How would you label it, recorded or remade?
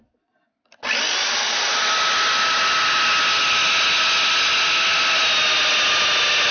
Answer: recorded